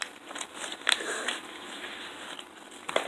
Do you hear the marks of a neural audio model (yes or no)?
no